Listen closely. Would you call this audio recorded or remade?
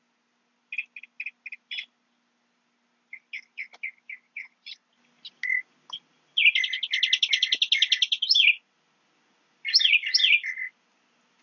recorded